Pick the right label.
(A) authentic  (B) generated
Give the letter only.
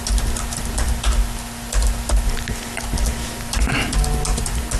A